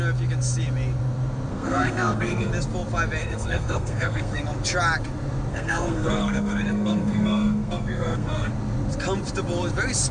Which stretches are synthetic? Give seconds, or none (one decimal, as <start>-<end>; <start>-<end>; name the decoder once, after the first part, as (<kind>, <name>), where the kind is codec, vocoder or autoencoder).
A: 1.5-2.5 (codec, SNAC); 3.2-4.4; 5.5-8.5